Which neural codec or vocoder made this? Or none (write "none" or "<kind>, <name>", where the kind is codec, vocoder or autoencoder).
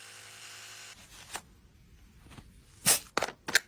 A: none